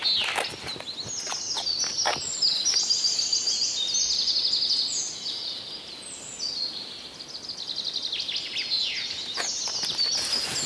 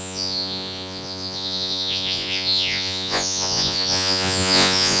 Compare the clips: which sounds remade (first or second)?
second